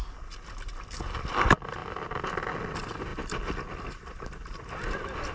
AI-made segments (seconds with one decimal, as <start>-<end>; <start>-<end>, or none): none